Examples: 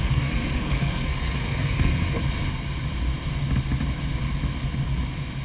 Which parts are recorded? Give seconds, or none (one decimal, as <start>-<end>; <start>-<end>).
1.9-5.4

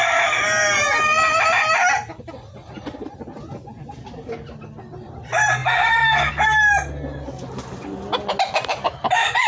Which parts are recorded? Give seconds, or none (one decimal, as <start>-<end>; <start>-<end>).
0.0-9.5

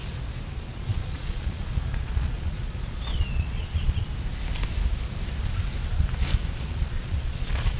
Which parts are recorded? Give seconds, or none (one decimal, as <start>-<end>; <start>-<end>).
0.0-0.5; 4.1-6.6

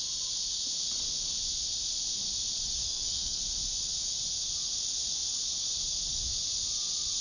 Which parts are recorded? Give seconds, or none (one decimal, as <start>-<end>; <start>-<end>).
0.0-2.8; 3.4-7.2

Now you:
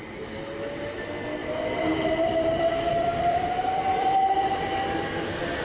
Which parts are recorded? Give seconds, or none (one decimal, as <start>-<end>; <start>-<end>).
0.0-1.4; 4.8-5.6

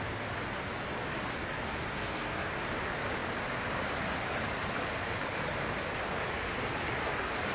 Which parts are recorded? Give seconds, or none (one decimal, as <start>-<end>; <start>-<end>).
0.0-1.9; 2.5-7.5

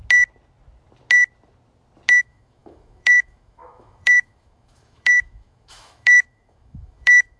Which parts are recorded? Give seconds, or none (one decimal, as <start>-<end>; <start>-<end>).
0.0-2.2